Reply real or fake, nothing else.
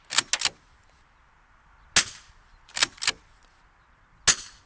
real